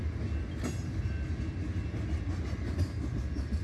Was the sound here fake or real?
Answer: real